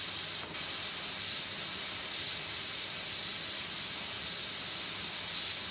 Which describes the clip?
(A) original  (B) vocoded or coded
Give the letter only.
A